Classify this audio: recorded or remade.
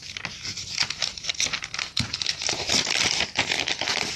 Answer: recorded